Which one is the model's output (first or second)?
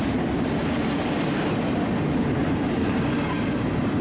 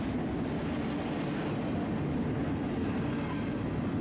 first